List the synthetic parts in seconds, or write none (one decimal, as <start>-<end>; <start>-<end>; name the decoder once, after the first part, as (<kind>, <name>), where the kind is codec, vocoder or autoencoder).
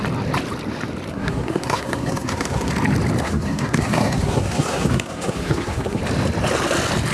1.1-2.7 (codec, SNAC); 3.2-6.0